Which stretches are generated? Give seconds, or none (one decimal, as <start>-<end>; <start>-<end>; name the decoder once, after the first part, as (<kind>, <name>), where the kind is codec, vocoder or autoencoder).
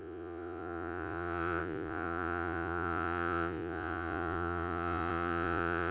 0.0-5.9 (vocoder, Vocos)